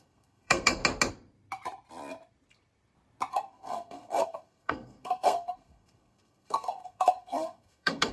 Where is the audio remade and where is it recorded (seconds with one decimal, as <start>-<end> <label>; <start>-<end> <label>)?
0.0-0.8 remade; 0.8-3.3 recorded; 3.3-8.1 remade